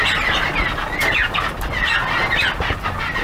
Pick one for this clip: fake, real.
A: real